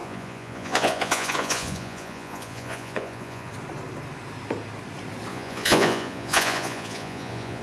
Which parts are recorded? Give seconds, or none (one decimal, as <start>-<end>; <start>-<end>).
3.5-5.3